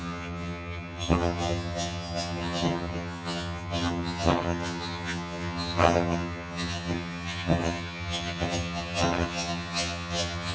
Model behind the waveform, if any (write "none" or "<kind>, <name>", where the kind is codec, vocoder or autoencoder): vocoder, HiFi-GAN